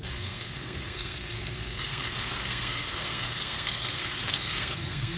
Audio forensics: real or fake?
fake